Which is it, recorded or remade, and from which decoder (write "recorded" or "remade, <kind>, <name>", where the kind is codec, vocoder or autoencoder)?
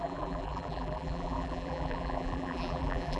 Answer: remade, vocoder, BigVGAN v2